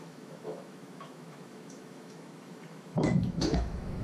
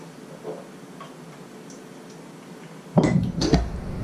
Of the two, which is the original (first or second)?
second